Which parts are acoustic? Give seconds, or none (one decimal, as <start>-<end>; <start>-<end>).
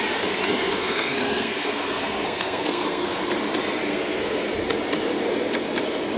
0.0-0.6; 3.2-3.9; 4.4-6.2